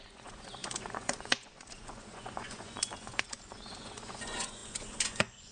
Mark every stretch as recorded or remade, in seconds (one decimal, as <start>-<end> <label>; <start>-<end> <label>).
0.0-5.5 remade